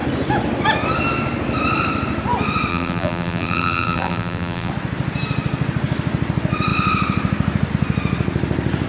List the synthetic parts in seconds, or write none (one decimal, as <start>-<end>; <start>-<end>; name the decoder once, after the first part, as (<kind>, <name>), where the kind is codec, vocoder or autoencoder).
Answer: 2.7-4.7 (vocoder, BigVGAN v2)

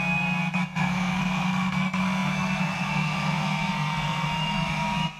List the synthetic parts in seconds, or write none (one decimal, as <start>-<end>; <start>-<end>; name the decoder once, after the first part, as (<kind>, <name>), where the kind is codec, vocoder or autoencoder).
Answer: 0.0-5.2 (codec, SNAC)

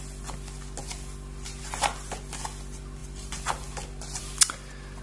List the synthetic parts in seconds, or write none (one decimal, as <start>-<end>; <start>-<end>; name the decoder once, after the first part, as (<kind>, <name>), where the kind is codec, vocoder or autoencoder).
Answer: none

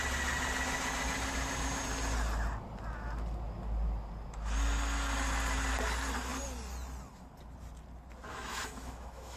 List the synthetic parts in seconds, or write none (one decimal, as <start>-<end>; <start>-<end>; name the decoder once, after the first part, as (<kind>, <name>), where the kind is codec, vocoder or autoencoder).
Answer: 8.3-9.4 (autoencoder, DAC-VAE)